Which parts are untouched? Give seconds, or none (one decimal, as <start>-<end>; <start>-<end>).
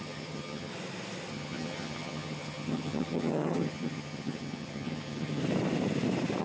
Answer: 0.7-1.3; 5.4-6.4